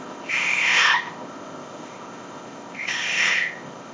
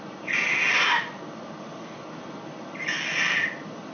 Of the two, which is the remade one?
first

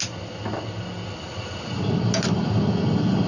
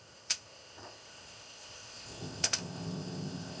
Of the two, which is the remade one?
second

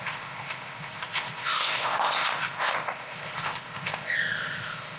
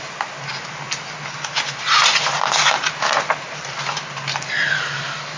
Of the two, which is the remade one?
first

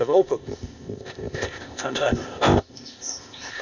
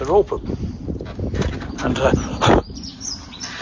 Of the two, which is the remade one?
first